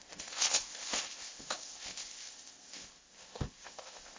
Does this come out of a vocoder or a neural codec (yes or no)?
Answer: yes